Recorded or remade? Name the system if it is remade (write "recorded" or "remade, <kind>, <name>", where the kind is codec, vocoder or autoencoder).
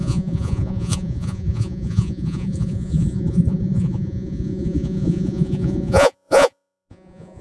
remade, vocoder, Vocos